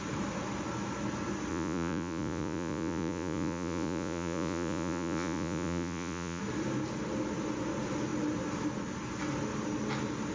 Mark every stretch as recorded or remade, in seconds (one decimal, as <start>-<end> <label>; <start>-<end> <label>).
0.0-1.5 recorded; 1.5-6.4 remade; 6.4-10.3 recorded